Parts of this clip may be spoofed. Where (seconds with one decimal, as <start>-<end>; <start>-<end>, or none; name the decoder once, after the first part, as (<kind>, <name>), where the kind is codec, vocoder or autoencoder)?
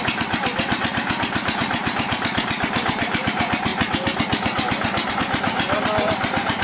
0.0-3.7 (vocoder, BigVGAN v2); 5.1-6.6